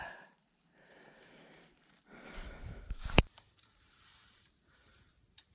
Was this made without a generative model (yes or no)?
no